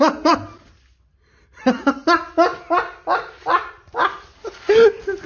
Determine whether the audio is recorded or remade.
recorded